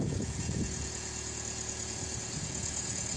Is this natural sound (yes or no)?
no